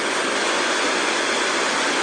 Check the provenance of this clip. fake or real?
fake